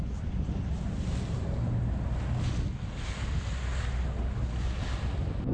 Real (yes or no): yes